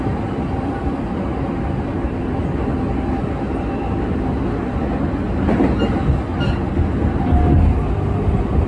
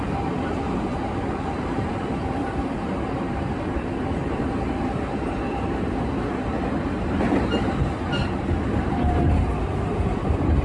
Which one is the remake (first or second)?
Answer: second